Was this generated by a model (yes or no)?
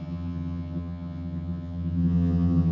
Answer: yes